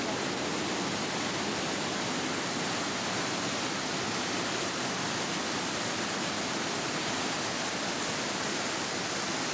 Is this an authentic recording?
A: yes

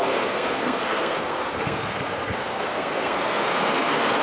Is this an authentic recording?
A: no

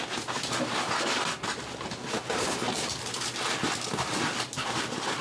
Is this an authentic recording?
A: yes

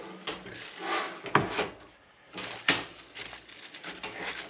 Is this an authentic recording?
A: yes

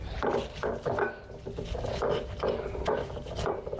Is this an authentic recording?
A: yes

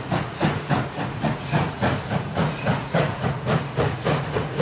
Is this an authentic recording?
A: no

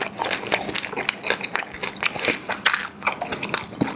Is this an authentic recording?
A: yes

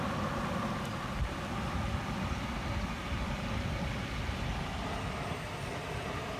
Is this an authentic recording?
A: yes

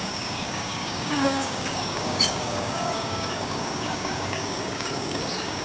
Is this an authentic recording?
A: no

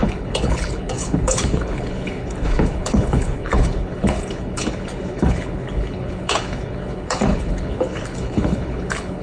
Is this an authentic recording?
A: no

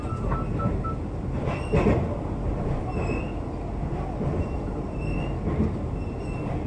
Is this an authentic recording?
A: yes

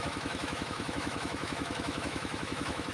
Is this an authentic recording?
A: no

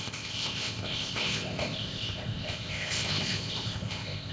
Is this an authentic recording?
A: no